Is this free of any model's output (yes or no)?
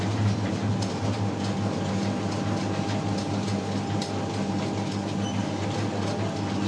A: yes